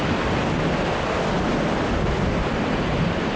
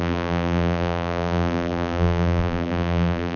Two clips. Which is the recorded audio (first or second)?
first